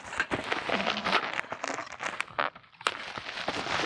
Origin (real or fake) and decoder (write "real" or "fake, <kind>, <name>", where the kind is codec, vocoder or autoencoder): real